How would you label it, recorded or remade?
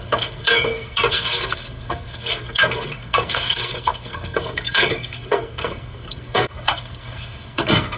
remade